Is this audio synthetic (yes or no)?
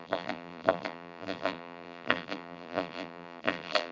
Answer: yes